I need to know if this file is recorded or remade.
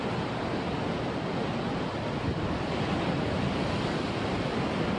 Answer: recorded